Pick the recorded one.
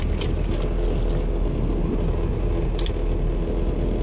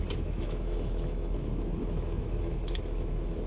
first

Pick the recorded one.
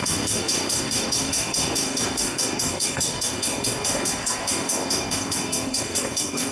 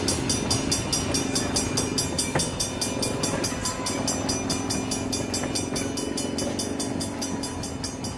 second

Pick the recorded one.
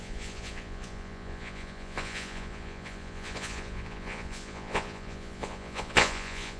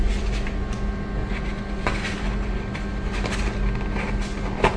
second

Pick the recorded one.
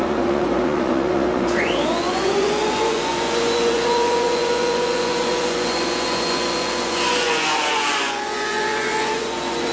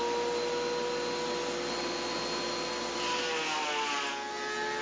second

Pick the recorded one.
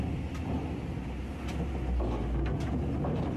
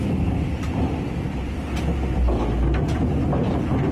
first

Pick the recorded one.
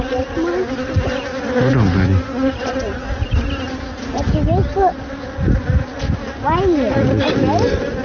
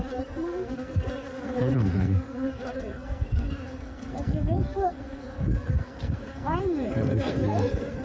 first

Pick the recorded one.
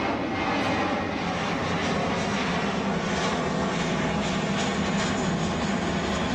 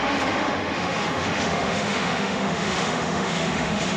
first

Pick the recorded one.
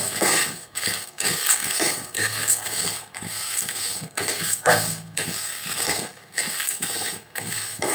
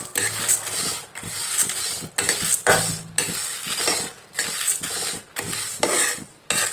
second